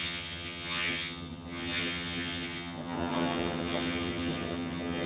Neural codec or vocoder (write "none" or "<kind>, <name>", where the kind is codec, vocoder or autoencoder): vocoder, HiFi-GAN